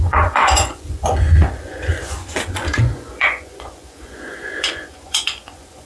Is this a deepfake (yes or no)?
yes